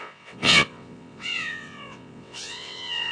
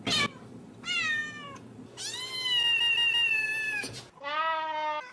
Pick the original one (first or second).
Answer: second